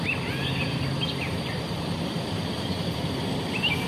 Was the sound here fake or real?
real